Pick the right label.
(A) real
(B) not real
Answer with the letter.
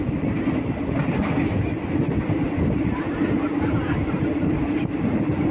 A